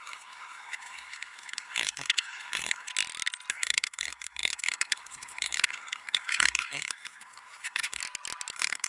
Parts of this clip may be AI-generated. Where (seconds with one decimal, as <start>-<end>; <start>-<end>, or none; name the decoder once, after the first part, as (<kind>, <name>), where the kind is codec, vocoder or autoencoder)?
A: 0.0-2.9 (codec, SNAC); 3.5-8.0; 8.5-8.9